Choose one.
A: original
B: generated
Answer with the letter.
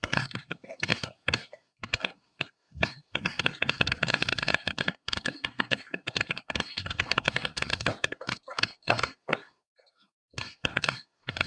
B